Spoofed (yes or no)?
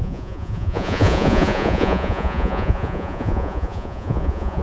yes